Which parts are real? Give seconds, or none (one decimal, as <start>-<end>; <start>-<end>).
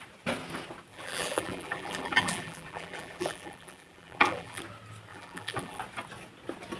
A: 0.0-0.9; 4.6-5.1; 5.8-6.8